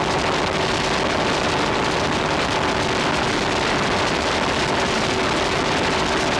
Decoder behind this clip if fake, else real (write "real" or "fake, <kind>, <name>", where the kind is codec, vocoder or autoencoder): real